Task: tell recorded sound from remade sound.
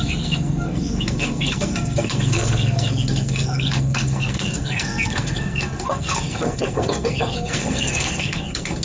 remade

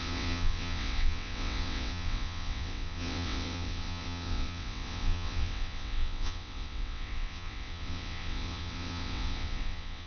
remade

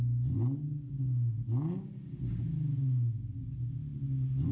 recorded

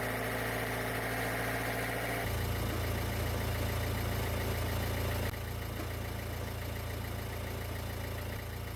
recorded